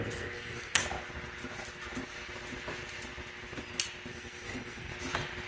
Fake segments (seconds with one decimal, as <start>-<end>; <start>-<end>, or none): 0.0-0.8; 4.1-4.9